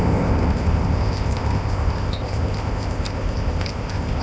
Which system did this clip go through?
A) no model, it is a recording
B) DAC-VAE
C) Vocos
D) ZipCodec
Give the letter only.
D